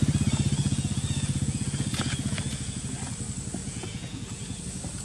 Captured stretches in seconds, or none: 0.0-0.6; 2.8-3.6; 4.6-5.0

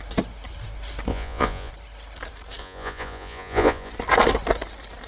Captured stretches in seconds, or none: 0.0-1.1; 1.7-2.6; 3.9-5.1